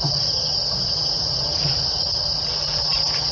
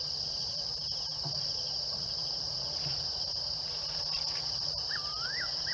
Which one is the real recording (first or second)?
first